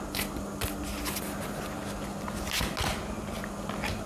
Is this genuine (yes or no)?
yes